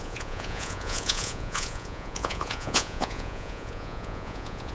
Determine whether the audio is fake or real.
fake